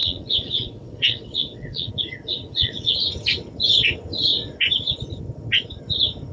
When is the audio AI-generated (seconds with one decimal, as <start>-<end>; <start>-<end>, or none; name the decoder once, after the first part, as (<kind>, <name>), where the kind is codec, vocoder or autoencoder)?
0.0-1.9 (vocoder, WaveNeXt); 2.3-3.0